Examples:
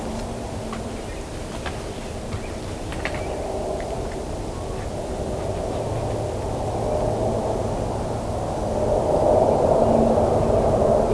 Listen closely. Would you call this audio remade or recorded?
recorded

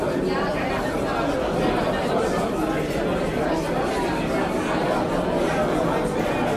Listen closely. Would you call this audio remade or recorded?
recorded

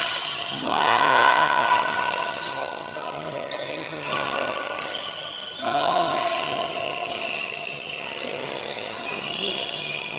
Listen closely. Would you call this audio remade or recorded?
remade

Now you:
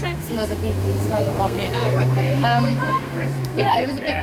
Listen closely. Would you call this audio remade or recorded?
remade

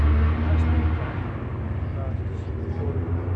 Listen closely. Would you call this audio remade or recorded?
recorded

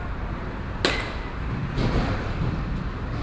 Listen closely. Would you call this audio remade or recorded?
recorded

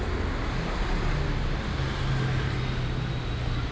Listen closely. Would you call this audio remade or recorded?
recorded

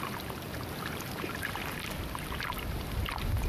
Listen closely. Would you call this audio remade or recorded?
recorded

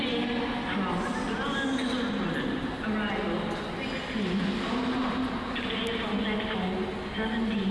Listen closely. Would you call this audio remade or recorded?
recorded